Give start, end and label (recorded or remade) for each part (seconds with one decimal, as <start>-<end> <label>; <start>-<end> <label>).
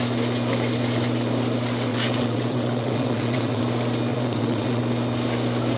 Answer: 0.0-1.9 recorded; 1.9-3.6 remade; 3.6-4.1 recorded; 4.1-4.8 remade; 4.8-5.8 recorded